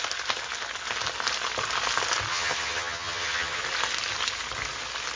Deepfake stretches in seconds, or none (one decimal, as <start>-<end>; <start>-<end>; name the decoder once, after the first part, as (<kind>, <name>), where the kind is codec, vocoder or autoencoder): 2.3-3.6 (vocoder, HiFi-GAN)